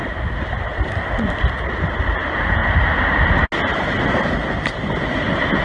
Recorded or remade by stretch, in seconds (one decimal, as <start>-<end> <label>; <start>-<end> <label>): 0.0-5.6 recorded